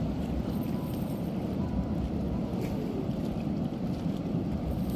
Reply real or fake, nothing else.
fake